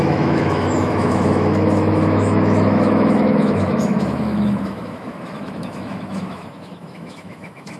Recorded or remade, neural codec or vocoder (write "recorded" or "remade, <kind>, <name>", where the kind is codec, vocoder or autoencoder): remade, autoencoder, DAC-VAE